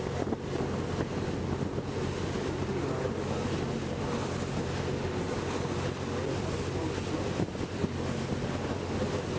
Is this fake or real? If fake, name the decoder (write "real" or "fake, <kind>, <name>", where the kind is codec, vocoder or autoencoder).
real